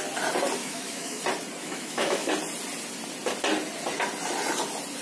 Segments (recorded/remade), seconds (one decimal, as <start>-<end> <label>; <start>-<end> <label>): 0.0-0.6 recorded; 0.6-1.2 remade; 1.2-1.6 recorded; 1.6-2.3 remade; 2.3-5.0 recorded